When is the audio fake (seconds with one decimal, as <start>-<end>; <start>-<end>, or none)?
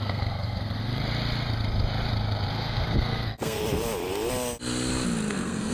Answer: 0.0-1.0; 2.5-3.6; 5.3-5.7